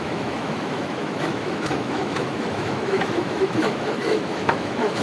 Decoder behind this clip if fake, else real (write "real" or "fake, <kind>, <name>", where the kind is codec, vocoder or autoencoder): fake, autoencoder, DAC-VAE